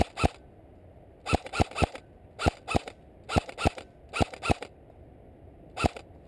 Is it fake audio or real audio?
real